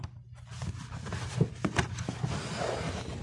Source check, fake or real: real